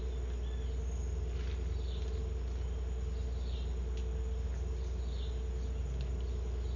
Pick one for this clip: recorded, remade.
recorded